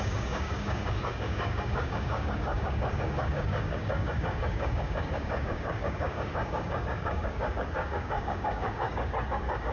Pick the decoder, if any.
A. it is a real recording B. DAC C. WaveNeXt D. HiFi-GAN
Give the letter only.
B